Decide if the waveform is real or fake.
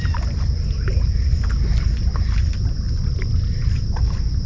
real